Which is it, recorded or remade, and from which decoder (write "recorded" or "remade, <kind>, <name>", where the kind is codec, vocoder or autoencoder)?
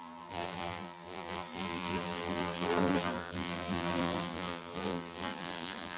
remade, vocoder, BigVGAN v2